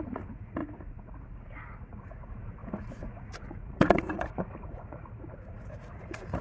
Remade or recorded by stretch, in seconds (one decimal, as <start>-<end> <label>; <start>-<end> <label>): 0.0-6.4 remade